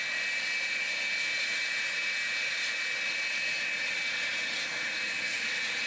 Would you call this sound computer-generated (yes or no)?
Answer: no